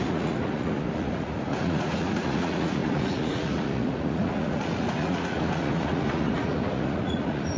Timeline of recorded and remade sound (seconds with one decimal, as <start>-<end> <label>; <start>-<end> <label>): 0.0-7.6 remade